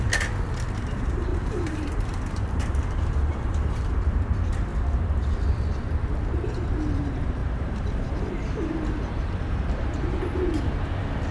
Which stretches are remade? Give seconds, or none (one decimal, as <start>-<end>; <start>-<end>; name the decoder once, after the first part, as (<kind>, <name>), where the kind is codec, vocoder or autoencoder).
1.3-3.9 (vocoder, BigVGAN v2); 7.4-10.2